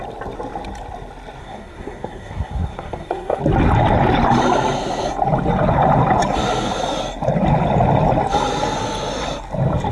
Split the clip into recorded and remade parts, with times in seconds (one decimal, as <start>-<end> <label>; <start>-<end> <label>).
0.0-1.4 recorded; 1.4-3.4 remade; 3.4-9.9 recorded